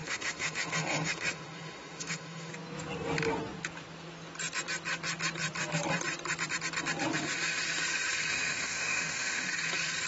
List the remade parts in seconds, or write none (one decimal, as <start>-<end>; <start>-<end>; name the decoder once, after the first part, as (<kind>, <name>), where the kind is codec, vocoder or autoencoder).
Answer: 0.0-2.5 (autoencoder, DAC-VAE); 8.3-9.5